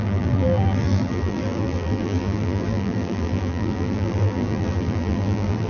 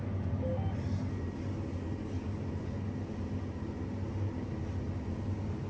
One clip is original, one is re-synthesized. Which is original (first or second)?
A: second